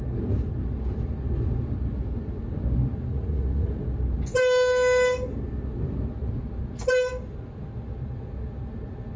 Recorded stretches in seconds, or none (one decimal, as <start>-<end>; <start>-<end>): 0.0-3.1; 3.7-9.2